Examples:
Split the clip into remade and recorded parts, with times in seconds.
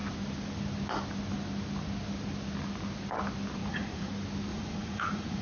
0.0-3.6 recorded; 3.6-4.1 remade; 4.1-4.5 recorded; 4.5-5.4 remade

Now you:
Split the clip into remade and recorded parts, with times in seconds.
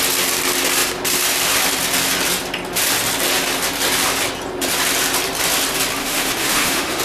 0.0-6.0 recorded; 6.0-7.0 remade